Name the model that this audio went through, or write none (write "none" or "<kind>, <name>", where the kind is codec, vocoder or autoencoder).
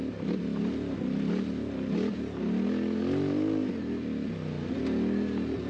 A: none